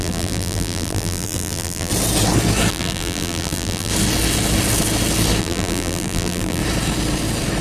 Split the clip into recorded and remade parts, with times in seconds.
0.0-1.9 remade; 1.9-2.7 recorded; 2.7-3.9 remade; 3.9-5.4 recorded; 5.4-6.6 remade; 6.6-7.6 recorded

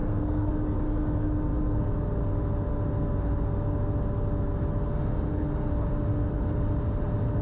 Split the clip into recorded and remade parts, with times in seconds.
0.0-0.5 remade; 0.5-7.4 recorded

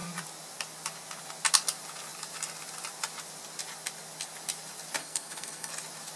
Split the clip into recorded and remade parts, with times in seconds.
0.0-5.0 recorded; 5.0-5.7 remade; 5.7-6.2 recorded

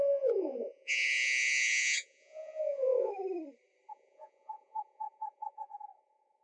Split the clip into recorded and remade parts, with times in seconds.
0.0-3.1 remade; 3.1-3.9 recorded; 3.9-6.4 remade

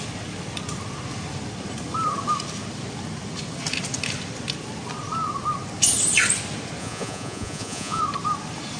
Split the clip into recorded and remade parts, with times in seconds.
0.0-6.8 recorded; 6.8-8.0 remade; 8.0-8.8 recorded